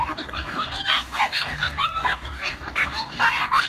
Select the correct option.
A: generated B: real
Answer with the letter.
A